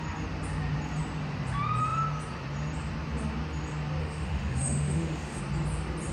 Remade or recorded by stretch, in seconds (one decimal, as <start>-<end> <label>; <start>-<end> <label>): 0.0-4.0 recorded; 4.0-5.4 remade; 5.4-6.1 recorded